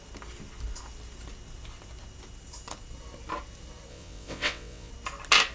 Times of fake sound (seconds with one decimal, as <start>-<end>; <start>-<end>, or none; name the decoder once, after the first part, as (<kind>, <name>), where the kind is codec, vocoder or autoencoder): 3.9-4.9 (vocoder, WaveNeXt)